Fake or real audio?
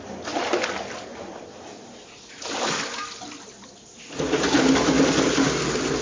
real